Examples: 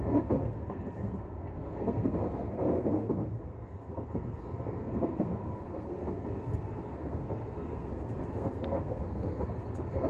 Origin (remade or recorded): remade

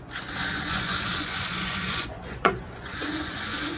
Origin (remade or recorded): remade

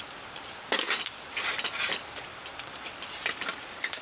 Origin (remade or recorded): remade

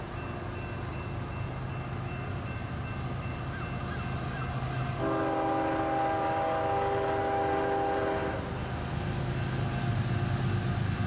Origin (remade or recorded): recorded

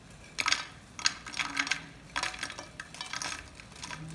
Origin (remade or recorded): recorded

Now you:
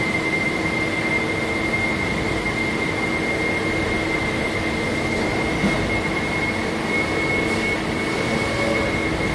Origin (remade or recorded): recorded